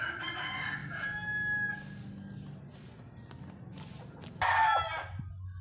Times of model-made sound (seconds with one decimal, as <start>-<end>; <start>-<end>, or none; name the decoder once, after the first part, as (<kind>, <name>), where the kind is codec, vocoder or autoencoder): none